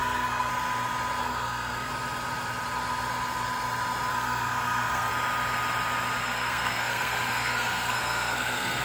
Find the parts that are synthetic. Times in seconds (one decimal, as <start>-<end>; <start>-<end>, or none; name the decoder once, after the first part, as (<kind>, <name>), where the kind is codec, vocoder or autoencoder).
0.0-0.5 (codec, SNAC); 1.2-1.9; 4.1-5.1; 6.2-8.8